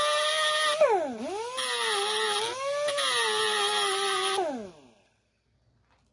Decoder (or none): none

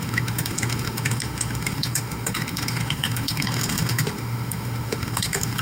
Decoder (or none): autoencoder, DAC-VAE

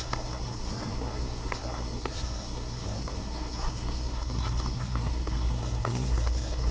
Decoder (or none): codec, SNAC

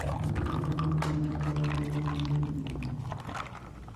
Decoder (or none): none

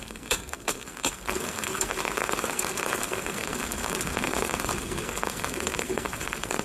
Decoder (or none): codec, SNAC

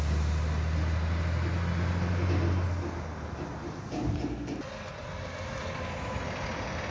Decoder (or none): none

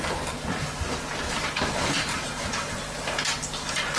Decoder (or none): none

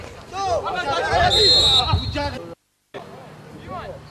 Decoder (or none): none